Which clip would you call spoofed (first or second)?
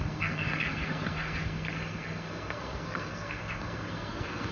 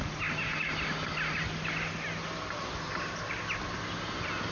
first